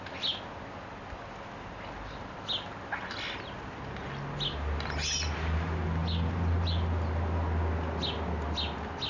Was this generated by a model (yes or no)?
no